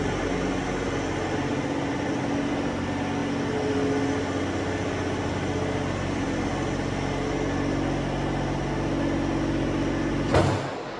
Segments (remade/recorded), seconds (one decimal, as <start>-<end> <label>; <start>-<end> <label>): 0.0-11.0 recorded